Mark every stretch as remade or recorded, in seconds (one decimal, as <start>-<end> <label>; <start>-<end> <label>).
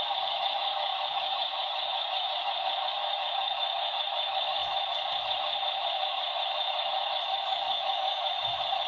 0.0-8.9 remade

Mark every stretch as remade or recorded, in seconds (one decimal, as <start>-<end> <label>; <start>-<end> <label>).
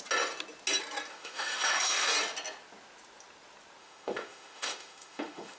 0.0-1.1 recorded; 1.1-2.1 remade; 2.1-3.8 recorded; 3.8-5.6 remade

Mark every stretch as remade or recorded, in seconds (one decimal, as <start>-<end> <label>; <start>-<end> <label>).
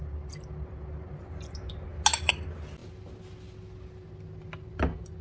0.0-5.2 recorded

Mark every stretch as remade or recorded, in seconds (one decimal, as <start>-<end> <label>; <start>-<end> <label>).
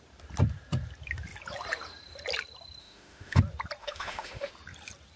0.0-2.8 recorded; 2.8-3.4 remade; 3.4-3.8 recorded; 3.8-4.5 remade; 4.5-5.2 recorded